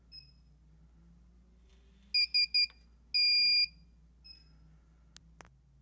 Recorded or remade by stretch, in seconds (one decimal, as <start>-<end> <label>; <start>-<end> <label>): 0.0-5.8 recorded